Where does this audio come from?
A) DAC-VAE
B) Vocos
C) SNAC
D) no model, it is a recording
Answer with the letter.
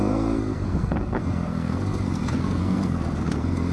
C